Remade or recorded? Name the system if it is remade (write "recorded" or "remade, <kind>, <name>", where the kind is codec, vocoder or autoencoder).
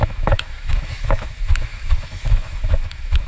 remade, autoencoder, DAC-VAE